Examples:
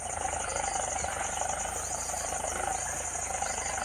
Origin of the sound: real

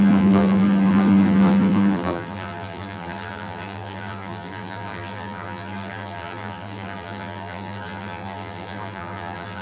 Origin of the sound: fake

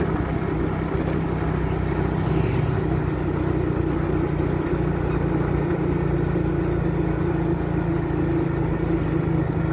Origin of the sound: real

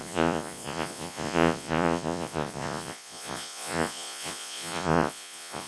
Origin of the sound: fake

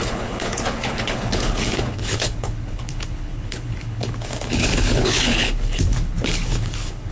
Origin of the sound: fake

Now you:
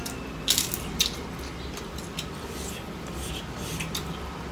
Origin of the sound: real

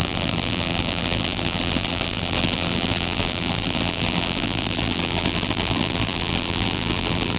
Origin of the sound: fake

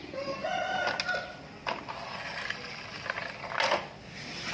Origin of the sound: real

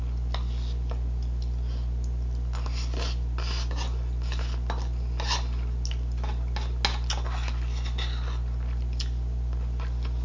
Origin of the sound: real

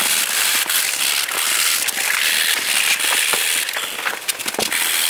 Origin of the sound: fake